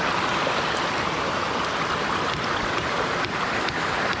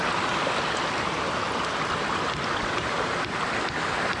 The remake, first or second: first